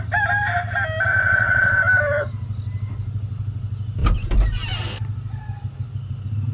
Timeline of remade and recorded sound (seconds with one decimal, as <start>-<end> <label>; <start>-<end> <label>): 0.0-1.1 recorded; 1.1-1.8 remade; 1.8-6.5 recorded